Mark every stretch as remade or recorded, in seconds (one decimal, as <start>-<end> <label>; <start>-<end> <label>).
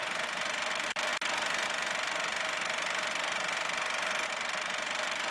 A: 0.0-1.1 remade; 1.1-4.3 recorded; 4.3-5.3 remade